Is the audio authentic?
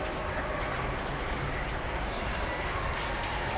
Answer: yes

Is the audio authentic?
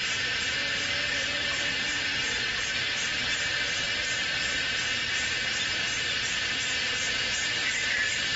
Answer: no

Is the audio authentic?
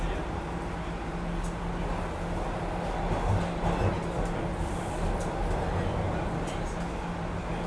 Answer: yes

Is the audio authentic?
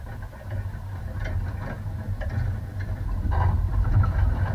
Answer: yes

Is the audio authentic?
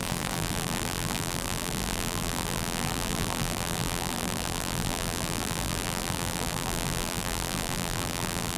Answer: no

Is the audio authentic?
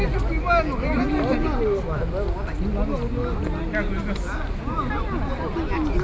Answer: yes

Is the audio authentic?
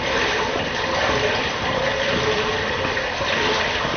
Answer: yes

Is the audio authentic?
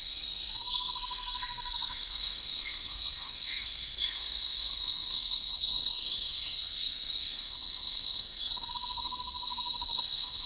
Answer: no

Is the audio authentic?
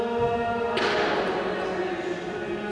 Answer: yes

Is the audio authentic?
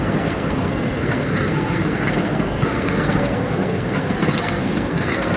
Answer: no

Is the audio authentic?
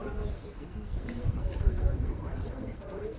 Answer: no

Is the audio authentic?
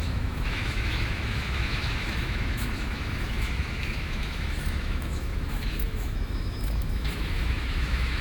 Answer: no